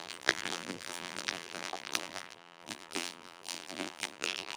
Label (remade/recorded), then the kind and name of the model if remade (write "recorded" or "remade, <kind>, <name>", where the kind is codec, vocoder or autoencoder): remade, vocoder, BigVGAN v2